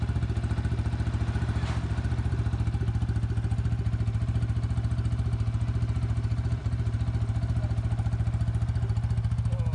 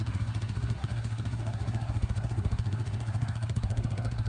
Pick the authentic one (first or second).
first